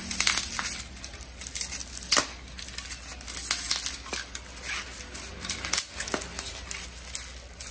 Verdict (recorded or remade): recorded